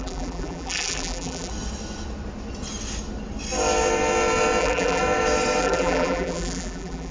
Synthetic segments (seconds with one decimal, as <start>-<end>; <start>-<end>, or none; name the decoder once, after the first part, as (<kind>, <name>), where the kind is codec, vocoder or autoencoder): 0.0-1.5 (vocoder, BigVGAN v2); 4.6-5.0; 5.6-7.1